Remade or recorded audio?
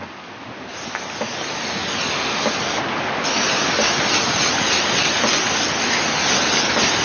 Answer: recorded